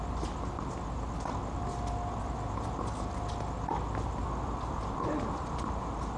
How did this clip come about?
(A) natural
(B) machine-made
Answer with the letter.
A